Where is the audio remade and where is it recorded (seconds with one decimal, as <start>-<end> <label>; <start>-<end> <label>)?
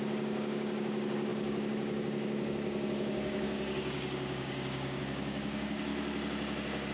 0.0-5.9 remade; 5.9-6.9 recorded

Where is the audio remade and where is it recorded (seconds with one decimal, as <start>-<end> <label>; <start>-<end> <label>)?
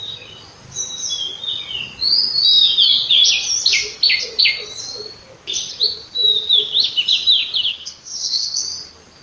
0.0-7.7 recorded; 7.7-8.6 remade; 8.6-9.2 recorded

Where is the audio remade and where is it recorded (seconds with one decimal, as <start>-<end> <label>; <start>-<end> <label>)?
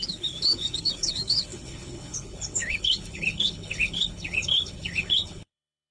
0.0-5.9 remade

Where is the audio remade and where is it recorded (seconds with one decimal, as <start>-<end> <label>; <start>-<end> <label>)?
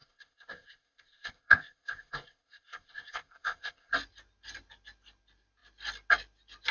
0.0-3.9 remade; 3.9-6.7 recorded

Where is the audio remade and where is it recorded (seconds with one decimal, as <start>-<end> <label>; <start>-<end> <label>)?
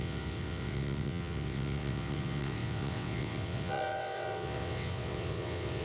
0.0-5.8 remade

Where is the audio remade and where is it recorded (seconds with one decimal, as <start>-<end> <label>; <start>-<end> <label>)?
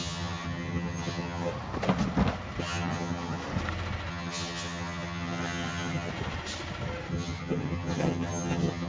0.0-1.5 remade; 1.5-2.6 recorded; 2.6-3.4 remade; 3.4-4.1 recorded; 4.1-6.1 remade; 6.1-7.1 recorded; 7.1-8.9 remade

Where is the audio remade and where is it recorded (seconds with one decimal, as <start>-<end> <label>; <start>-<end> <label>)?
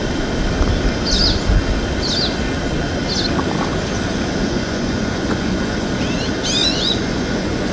0.0-4.4 recorded; 4.4-5.9 remade; 5.9-6.6 recorded; 6.6-7.7 remade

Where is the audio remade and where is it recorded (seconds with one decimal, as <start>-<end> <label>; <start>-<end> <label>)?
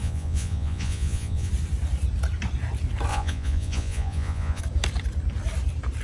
0.0-1.5 remade; 1.5-3.1 recorded; 3.1-4.6 remade; 4.6-6.0 recorded